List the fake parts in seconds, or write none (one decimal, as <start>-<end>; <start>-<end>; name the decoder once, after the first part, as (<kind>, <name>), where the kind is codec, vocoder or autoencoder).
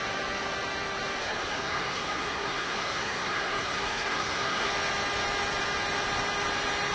1.2-4.7 (codec, SNAC)